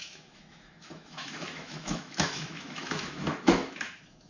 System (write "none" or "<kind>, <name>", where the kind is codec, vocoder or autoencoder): autoencoder, DAC-VAE